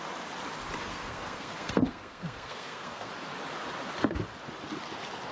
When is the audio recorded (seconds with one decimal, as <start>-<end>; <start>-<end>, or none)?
0.0-0.9; 3.1-5.3